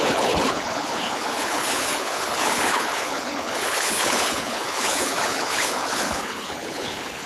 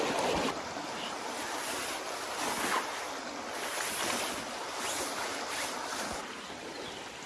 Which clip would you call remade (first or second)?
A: first